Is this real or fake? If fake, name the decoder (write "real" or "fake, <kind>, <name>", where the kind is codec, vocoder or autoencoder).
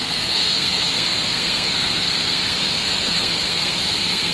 fake, codec, SNAC